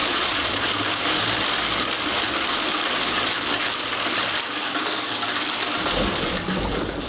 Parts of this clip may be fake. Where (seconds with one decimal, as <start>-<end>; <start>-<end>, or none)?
0.0-0.7